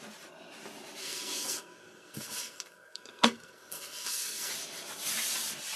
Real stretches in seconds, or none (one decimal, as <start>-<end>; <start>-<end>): 0.0-1.0; 4.5-5.8